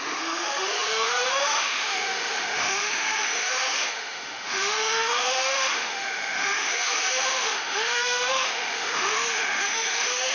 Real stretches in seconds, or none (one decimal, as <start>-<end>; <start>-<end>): none